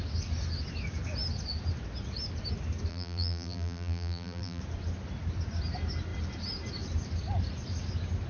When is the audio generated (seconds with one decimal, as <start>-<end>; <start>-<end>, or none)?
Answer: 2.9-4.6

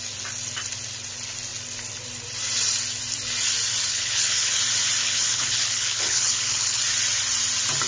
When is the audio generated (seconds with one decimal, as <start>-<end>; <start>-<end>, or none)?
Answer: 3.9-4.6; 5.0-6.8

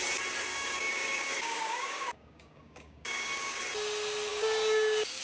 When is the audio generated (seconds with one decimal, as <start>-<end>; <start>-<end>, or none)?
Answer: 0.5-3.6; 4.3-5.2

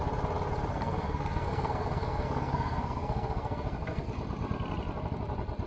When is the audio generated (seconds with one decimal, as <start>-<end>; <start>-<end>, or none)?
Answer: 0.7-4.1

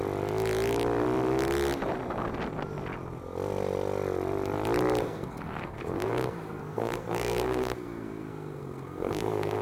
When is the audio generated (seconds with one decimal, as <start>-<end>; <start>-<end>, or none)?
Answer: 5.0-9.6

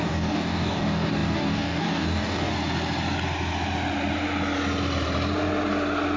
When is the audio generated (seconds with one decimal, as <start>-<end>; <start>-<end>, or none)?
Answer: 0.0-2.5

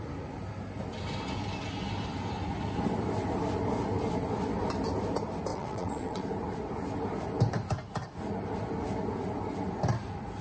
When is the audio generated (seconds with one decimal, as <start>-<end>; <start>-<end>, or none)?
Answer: 5.5-6.2